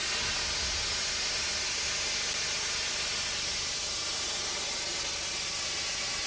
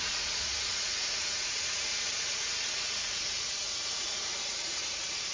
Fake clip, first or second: second